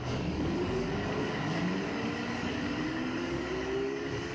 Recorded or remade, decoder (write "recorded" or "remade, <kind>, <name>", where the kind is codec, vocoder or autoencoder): remade, codec, DAC